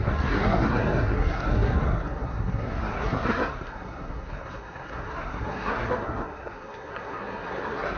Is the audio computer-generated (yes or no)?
yes